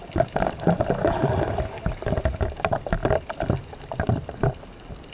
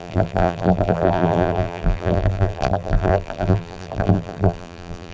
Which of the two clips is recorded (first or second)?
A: first